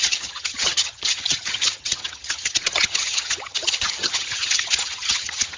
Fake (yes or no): yes